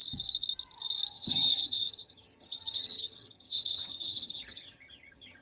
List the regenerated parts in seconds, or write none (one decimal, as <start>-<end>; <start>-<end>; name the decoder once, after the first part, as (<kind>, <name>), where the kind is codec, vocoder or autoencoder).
1.1-5.4 (vocoder, HiFi-GAN)